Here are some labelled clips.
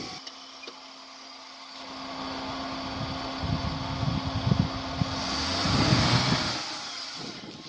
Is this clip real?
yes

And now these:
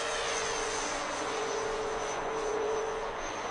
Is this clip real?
no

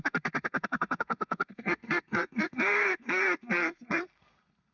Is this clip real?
no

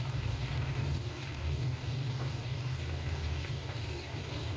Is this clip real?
no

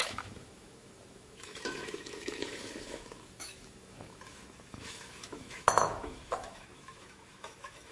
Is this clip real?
no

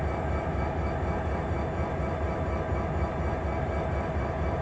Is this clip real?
yes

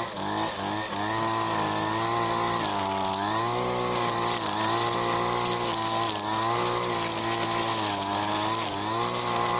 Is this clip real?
yes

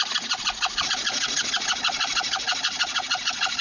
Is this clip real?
no